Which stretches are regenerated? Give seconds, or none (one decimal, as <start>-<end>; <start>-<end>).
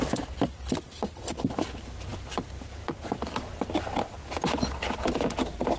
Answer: none